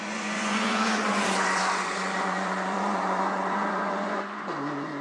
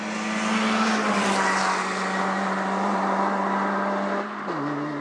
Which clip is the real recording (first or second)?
second